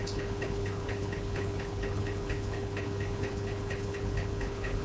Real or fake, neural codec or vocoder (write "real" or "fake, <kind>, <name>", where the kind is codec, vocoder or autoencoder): fake, codec, HILCodec